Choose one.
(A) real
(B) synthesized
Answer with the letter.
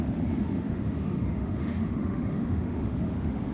B